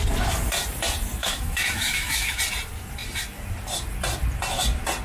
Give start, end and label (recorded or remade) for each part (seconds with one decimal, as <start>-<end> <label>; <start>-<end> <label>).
0.0-1.2 recorded; 1.2-2.4 remade; 2.4-5.0 recorded